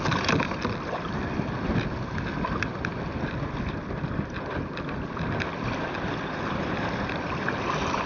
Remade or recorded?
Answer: recorded